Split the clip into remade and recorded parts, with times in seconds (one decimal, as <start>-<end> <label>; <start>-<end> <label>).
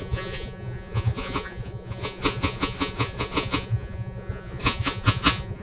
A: 0.0-5.6 remade